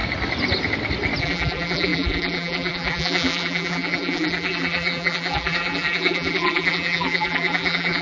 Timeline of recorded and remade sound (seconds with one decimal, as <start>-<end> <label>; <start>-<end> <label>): 0.0-1.2 recorded; 1.2-8.0 remade